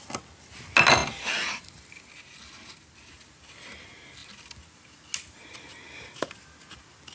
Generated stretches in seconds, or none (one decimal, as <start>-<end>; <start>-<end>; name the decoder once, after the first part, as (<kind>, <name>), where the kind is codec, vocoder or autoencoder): none